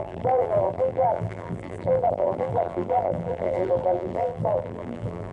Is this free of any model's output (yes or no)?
no